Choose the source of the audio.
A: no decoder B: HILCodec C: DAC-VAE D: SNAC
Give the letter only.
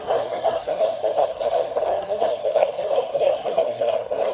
D